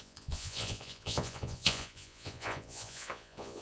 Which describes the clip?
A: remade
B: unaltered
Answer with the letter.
A